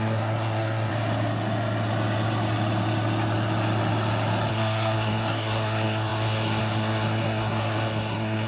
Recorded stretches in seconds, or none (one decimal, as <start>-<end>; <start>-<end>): 0.9-4.5